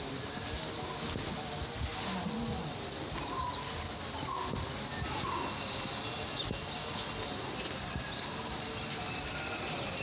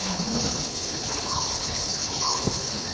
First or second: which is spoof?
second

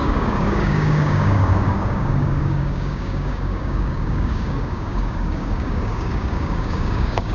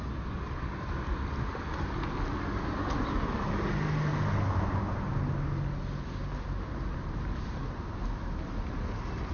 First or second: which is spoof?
first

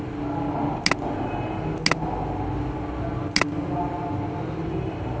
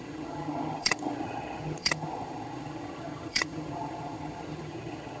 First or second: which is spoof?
second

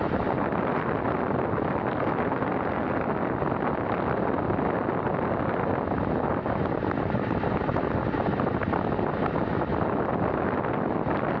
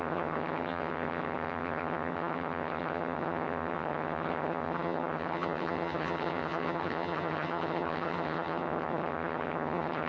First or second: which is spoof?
second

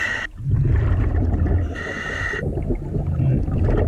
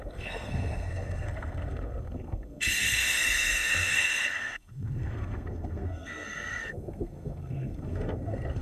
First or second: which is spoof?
second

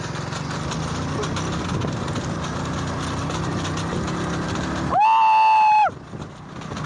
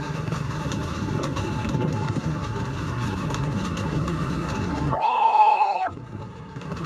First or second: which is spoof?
second